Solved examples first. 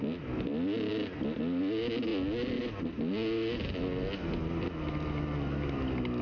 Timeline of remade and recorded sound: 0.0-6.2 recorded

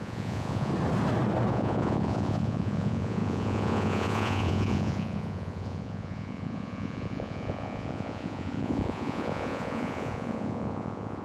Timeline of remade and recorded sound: 0.0-0.7 remade; 0.7-1.5 recorded; 1.5-11.2 remade

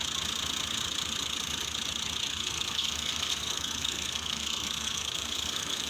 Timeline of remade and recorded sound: 0.0-2.3 recorded; 2.3-5.9 remade

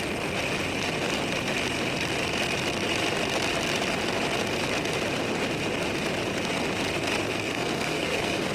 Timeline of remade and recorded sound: 0.0-7.3 recorded; 7.3-8.5 remade

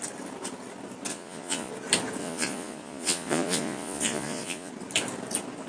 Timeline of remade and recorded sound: 0.0-1.1 recorded; 1.1-1.7 remade; 1.7-2.2 recorded; 2.2-4.7 remade; 4.7-5.7 recorded